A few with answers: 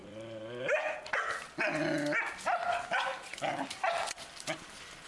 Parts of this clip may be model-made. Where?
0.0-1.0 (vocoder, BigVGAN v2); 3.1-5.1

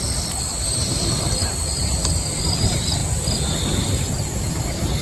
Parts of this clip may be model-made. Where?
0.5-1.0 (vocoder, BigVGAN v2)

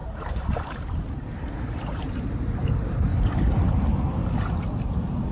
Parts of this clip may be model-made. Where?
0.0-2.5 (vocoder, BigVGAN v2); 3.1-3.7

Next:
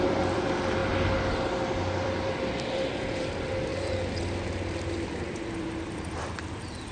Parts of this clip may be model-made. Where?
0.0-0.8 (vocoder, BigVGAN v2); 1.8-6.9

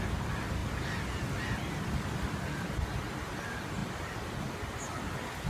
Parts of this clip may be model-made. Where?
0.6-1.9 (vocoder, BigVGAN v2)

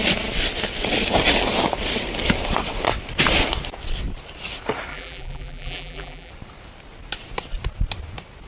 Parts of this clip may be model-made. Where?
4.9-6.3 (vocoder, BigVGAN v2)

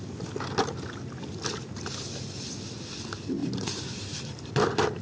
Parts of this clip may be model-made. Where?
3.4-4.5 (vocoder, BigVGAN v2)